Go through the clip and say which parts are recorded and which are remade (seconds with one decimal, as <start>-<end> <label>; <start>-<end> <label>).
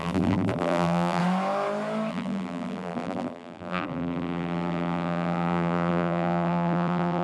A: 0.0-1.2 remade; 1.2-2.1 recorded; 2.1-7.2 remade